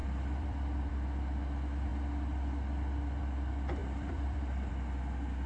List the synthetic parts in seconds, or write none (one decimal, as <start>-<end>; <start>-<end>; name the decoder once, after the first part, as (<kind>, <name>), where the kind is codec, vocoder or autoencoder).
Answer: 0.0-0.9 (vocoder, BigVGAN v2); 3.8-4.7